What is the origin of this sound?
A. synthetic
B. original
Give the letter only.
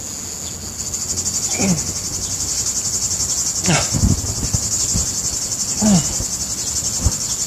B